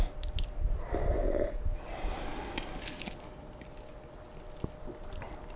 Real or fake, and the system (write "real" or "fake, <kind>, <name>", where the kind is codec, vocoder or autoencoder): real